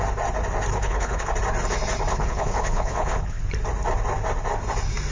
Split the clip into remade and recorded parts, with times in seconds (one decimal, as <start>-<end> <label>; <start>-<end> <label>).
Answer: 0.0-0.7 recorded; 0.7-1.3 remade; 1.3-2.1 recorded; 2.1-3.4 remade; 3.4-5.1 recorded